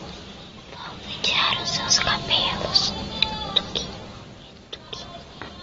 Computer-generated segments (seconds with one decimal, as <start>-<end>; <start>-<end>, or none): none